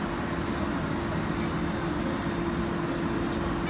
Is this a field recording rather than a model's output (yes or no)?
yes